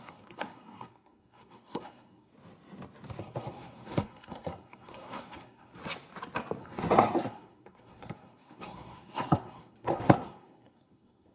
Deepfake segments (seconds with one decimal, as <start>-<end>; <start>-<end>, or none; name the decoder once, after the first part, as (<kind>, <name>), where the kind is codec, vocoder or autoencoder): 0.0-2.3 (codec, SNAC); 3.2-5.8; 6.6-11.3